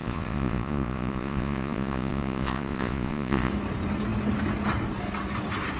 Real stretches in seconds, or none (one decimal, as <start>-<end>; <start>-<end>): 3.5-5.8